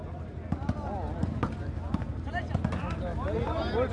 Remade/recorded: recorded